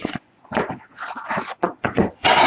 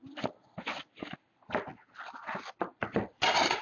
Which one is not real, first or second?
first